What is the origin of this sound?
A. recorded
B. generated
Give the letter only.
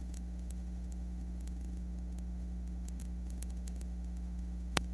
B